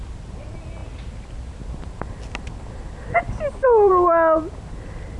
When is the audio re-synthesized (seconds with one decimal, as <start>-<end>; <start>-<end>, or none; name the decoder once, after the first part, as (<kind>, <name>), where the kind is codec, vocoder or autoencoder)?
none